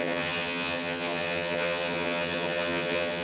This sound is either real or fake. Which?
fake